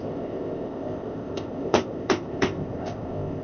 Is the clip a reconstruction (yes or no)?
yes